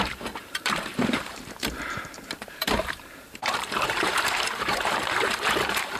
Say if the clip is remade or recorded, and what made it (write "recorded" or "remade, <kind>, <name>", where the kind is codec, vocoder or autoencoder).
remade, vocoder, BigVGAN v2